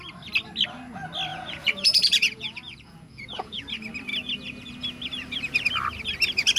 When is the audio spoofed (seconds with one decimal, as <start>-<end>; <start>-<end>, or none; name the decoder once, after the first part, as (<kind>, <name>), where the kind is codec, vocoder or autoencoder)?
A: 1.3-3.6 (vocoder, Vocos)